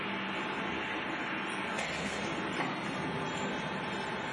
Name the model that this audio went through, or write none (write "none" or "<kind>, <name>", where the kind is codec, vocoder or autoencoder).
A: none